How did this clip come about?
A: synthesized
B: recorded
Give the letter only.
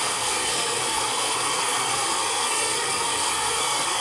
A